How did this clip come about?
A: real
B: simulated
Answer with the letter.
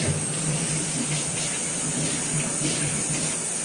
A